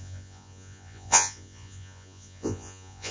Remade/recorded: remade